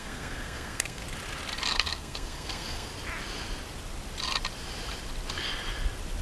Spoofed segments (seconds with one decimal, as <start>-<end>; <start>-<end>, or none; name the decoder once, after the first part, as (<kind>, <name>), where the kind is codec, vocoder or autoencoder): 0.0-1.0 (codec, SNAC); 1.7-2.9